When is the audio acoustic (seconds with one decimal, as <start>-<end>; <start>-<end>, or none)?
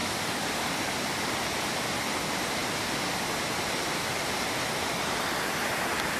0.9-6.2